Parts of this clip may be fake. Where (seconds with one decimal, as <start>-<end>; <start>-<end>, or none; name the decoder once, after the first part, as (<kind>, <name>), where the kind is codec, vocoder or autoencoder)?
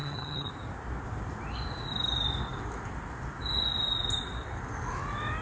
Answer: 0.0-0.5 (vocoder, HiFi-GAN)